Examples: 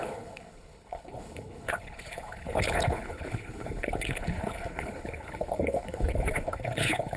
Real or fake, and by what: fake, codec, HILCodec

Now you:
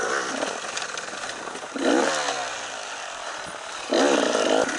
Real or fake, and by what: real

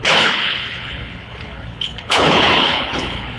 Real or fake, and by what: fake, codec, HILCodec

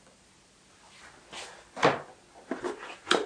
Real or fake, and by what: real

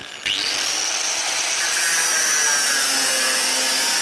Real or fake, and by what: real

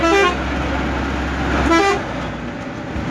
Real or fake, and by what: real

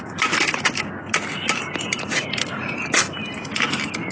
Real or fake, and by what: real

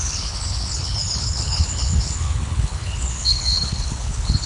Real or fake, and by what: fake, codec, HILCodec